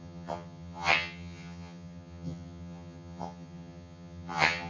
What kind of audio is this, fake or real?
fake